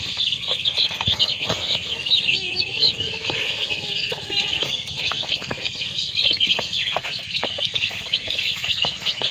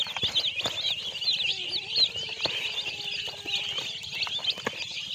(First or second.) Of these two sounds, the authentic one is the second